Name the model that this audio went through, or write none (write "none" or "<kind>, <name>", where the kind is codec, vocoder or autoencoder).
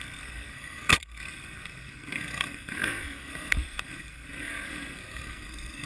codec, SNAC